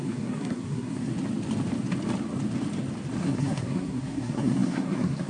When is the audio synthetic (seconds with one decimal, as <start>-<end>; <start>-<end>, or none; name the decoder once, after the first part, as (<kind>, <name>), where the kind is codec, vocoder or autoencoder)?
0.0-1.1 (codec, SNAC); 3.2-5.3